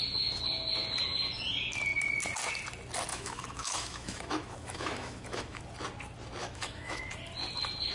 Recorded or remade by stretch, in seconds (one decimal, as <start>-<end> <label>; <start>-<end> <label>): 0.0-3.1 recorded; 3.1-5.6 remade; 5.6-6.4 recorded; 6.4-7.0 remade; 7.0-7.9 recorded